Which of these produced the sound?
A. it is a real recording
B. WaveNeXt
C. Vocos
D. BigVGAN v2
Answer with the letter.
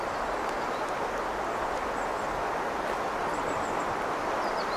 A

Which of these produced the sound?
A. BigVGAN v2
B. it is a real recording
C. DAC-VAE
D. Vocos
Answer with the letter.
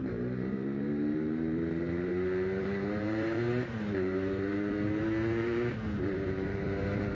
A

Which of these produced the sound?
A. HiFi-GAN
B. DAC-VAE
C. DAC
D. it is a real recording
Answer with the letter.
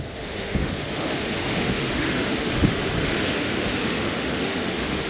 B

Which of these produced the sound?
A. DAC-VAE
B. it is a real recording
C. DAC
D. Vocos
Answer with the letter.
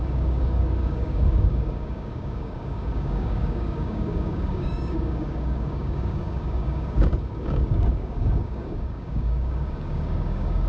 C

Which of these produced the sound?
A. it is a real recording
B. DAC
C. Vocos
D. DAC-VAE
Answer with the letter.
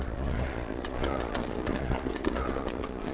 C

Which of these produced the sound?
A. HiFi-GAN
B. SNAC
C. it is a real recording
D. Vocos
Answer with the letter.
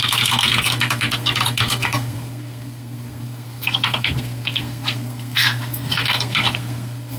B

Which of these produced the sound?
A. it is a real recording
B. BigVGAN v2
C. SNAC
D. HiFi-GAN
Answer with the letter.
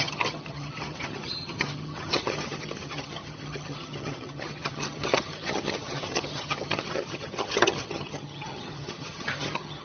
D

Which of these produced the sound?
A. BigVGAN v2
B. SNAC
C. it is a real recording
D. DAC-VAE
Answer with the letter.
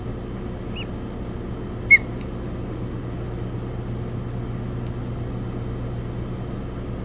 C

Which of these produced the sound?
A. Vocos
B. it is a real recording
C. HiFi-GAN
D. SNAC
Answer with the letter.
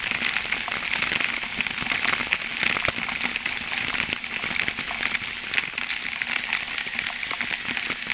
B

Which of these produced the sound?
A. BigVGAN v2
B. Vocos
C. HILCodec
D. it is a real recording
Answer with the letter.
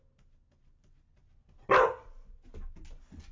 D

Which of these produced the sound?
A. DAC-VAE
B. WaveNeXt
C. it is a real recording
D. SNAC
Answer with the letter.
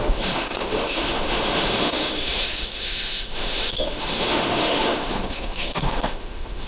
A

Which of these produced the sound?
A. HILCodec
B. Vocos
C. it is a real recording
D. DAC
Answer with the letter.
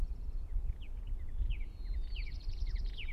B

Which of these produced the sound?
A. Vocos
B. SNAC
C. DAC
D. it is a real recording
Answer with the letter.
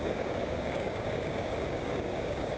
C